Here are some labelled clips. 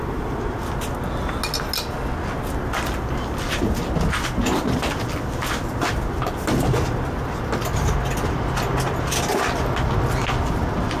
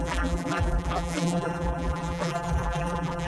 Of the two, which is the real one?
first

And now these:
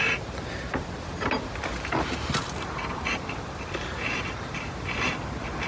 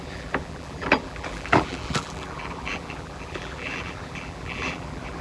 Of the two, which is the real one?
first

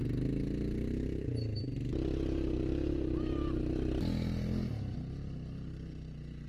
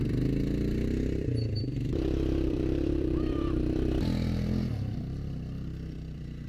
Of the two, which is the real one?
first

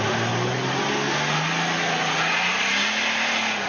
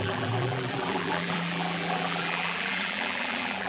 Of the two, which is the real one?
first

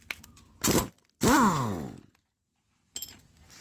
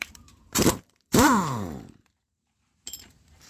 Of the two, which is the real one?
first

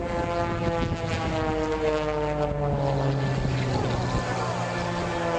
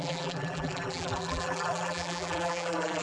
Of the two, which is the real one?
first